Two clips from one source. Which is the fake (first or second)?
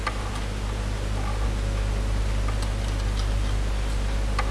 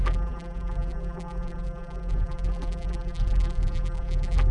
second